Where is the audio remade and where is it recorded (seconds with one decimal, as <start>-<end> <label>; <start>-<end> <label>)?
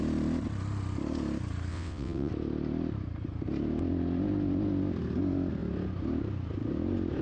0.0-1.7 recorded; 1.7-2.3 remade; 2.3-7.2 recorded